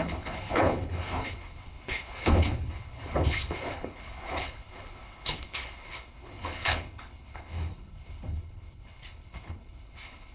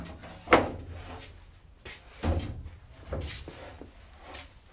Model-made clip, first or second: first